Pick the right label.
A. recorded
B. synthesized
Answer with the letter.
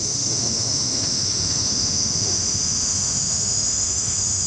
B